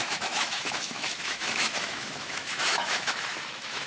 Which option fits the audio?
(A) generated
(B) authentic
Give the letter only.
A